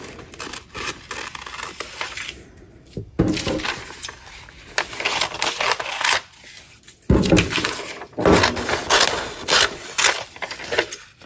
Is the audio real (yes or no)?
yes